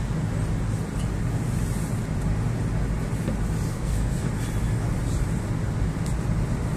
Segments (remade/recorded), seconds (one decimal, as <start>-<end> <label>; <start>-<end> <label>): 0.0-3.7 recorded; 3.7-4.3 remade; 4.3-6.8 recorded